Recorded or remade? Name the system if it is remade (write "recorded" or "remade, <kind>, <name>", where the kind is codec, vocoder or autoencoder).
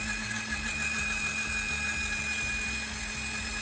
recorded